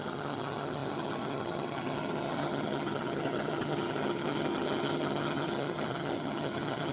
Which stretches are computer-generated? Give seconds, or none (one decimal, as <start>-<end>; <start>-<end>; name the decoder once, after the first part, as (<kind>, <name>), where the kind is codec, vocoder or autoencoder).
0.0-6.9 (vocoder, HiFi-GAN)